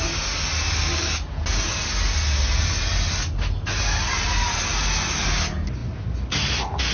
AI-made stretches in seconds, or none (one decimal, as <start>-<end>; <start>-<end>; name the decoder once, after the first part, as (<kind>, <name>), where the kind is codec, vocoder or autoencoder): none